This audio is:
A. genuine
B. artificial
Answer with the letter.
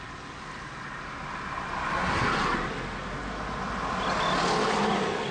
A